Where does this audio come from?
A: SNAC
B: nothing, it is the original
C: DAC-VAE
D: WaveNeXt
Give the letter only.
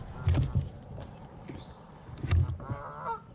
B